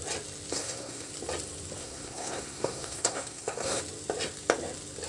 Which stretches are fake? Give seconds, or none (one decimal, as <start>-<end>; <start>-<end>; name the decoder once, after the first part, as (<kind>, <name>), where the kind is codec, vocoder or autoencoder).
0.5-1.1 (codec, SNAC); 1.8-3.8